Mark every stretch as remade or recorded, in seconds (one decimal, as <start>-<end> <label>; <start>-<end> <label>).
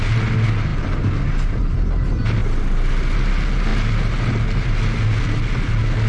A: 0.0-6.1 recorded